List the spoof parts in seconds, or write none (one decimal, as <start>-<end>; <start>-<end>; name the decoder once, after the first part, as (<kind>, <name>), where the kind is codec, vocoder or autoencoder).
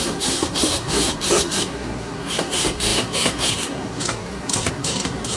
0.0-5.4 (codec, SNAC)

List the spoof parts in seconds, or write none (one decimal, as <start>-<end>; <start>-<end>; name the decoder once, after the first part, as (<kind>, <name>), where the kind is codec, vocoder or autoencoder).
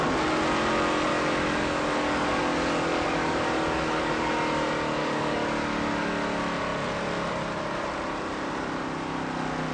1.1-4.3 (codec, DAC); 5.0-6.1